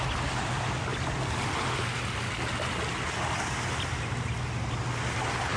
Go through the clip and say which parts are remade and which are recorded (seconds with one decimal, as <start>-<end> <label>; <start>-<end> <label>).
0.0-5.6 recorded